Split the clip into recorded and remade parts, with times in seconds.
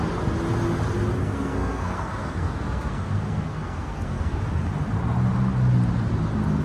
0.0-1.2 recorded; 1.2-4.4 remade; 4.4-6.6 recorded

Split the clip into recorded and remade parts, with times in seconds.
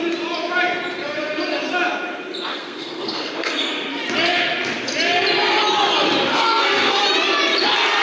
0.0-2.5 recorded; 2.5-4.0 remade; 4.0-6.3 recorded; 6.3-6.9 remade; 6.9-8.0 recorded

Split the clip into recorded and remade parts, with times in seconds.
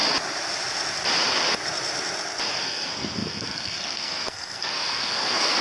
0.0-2.5 recorded; 2.5-5.6 remade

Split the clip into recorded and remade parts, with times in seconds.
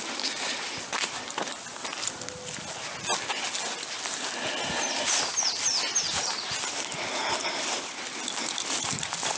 0.0-9.4 recorded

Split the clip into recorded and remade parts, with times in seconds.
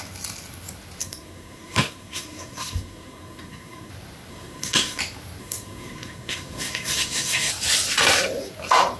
0.0-1.0 recorded; 1.0-3.9 remade; 3.9-4.3 recorded; 4.3-5.0 remade; 5.0-5.4 recorded; 5.4-7.5 remade; 7.5-9.0 recorded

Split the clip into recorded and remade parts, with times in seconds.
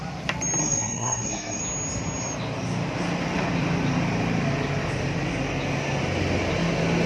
0.0-0.6 recorded; 0.6-1.6 remade; 1.6-7.1 recorded